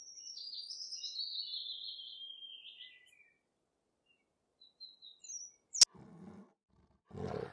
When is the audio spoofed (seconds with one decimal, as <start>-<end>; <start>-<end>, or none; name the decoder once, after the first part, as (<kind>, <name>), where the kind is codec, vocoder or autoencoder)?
none